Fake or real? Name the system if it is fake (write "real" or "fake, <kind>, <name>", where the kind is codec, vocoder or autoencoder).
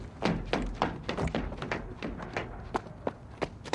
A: real